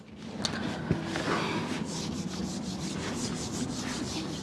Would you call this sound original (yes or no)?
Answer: yes